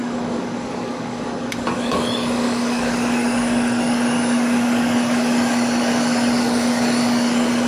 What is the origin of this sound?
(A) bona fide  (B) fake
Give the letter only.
B